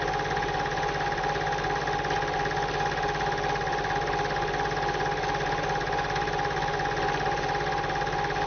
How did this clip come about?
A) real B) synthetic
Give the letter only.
A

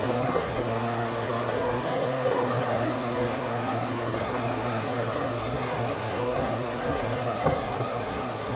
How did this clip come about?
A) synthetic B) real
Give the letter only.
A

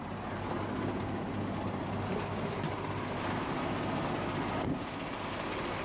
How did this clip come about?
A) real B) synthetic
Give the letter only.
A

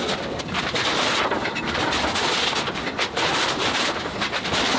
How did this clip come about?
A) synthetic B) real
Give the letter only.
B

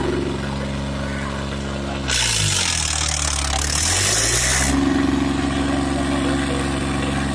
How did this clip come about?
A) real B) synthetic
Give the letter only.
A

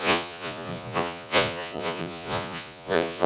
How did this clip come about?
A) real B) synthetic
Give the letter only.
B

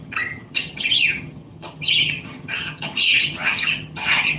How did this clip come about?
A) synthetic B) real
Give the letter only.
A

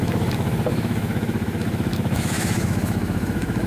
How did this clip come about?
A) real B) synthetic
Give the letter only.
B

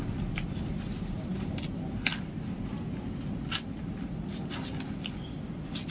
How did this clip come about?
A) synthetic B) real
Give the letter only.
B